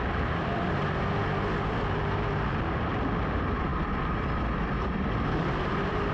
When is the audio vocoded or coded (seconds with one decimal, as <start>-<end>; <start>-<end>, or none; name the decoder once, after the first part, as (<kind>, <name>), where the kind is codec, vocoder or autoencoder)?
0.0-1.2 (vocoder, BigVGAN v2); 2.9-3.7; 5.4-6.1